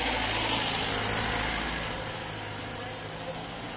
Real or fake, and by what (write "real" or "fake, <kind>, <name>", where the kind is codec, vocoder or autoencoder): real